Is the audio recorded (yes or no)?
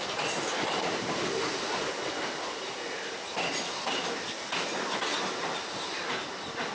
yes